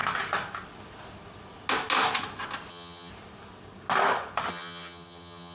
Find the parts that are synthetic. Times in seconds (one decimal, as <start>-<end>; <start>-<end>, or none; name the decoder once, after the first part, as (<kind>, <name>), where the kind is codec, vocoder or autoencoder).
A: 2.7-3.1 (vocoder, HiFi-GAN); 4.5-5.5